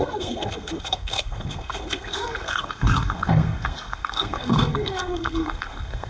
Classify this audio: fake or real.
fake